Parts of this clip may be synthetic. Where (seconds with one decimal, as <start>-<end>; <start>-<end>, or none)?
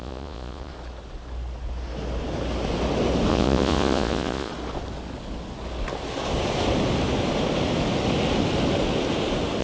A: 0.0-0.7; 3.3-4.5